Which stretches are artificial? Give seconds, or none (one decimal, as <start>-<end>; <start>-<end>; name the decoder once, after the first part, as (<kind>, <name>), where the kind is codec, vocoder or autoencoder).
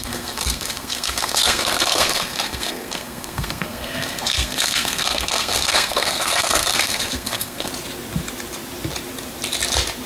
0.0-7.7 (codec, SNAC)